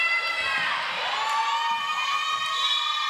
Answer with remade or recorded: recorded